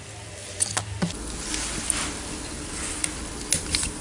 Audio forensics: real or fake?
real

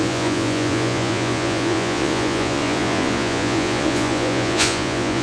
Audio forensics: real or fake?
fake